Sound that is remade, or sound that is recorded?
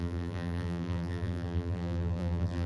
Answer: remade